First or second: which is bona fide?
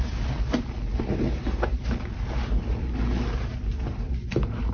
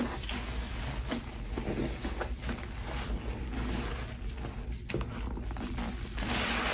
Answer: second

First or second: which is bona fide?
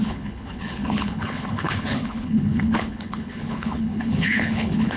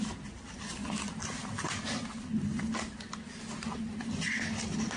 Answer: second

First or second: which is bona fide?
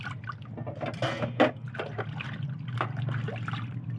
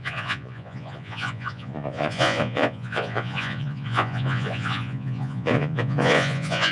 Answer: first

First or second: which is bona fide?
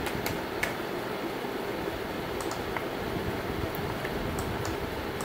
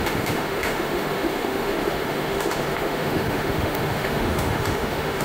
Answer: first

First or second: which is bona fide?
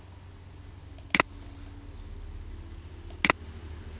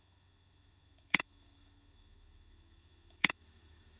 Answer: first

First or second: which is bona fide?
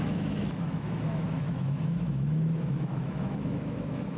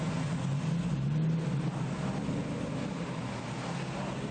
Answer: second